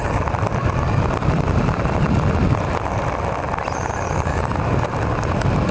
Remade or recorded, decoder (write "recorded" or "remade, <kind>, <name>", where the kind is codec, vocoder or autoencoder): recorded